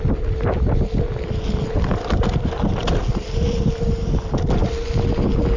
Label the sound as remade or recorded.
recorded